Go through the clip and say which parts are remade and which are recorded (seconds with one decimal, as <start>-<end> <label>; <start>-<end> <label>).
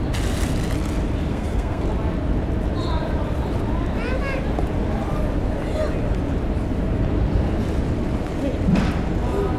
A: 0.0-1.3 recorded; 1.3-1.8 remade; 1.8-9.6 recorded